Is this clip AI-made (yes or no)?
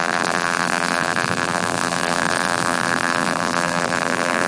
yes